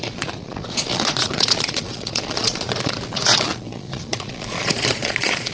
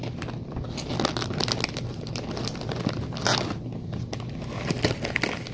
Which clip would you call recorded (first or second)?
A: second